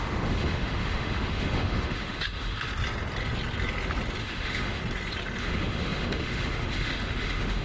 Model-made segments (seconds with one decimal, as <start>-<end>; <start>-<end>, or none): 0.0-2.7; 4.2-4.8; 5.4-7.6